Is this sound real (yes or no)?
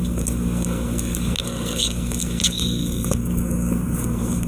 no